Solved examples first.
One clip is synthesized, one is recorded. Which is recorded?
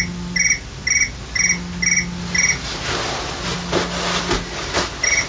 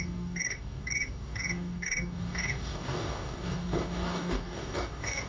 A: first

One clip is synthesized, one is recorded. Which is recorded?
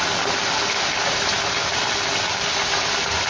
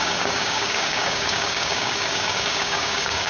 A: first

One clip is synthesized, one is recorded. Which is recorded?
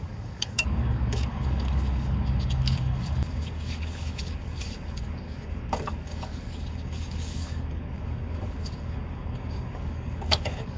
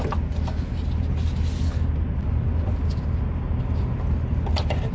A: second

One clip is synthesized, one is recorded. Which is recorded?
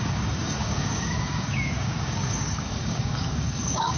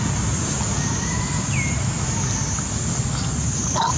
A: second